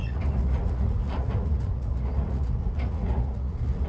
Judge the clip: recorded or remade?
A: remade